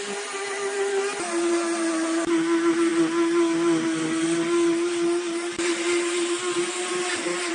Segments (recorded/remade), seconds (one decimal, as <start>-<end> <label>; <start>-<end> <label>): 0.0-7.5 recorded